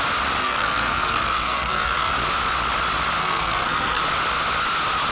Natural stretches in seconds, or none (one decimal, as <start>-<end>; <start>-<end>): 0.0-0.4; 2.1-3.2; 4.0-5.1